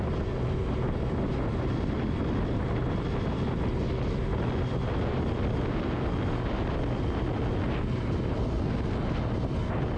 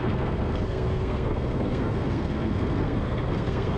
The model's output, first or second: second